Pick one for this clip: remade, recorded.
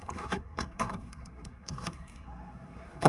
remade